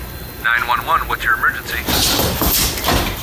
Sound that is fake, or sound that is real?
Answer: real